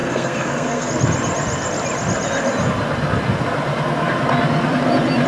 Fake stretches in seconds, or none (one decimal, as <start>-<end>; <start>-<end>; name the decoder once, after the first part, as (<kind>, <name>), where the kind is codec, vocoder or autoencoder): 0.0-0.9 (codec, SNAC)